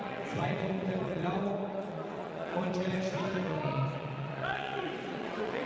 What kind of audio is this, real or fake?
fake